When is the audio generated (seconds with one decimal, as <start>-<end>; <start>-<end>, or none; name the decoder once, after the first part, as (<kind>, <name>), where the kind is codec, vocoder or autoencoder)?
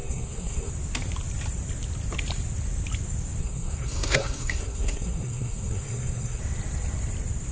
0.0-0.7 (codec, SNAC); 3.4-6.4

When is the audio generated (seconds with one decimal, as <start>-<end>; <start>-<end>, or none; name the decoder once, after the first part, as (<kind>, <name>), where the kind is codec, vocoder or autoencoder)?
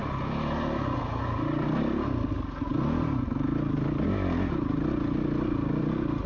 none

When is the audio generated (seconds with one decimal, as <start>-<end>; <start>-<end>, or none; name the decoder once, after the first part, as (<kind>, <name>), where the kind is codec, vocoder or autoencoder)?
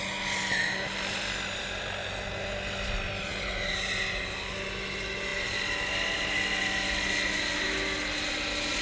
none